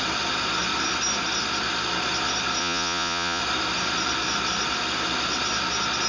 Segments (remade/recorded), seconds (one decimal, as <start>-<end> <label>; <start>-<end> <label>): 0.0-2.6 recorded; 2.6-3.4 remade; 3.4-6.1 recorded